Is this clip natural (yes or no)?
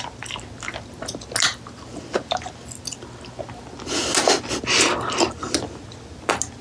yes